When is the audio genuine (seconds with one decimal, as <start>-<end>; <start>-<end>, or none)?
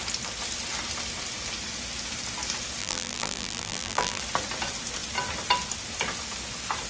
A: 0.0-2.8; 4.2-6.9